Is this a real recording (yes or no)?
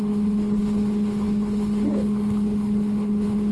no